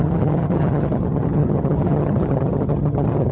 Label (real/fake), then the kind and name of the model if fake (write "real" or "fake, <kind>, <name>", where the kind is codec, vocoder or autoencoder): fake, vocoder, HiFi-GAN